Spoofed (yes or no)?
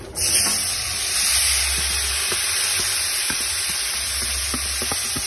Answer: no